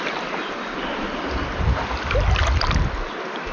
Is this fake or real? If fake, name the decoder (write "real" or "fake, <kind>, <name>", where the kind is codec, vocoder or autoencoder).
real